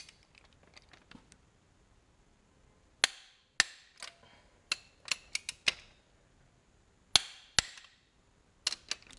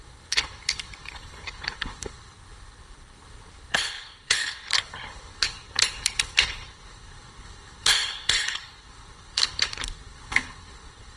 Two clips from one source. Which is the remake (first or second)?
second